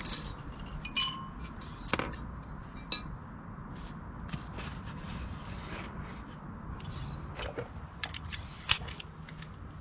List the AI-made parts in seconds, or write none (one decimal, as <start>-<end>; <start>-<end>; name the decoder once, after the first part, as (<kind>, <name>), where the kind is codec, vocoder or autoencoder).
none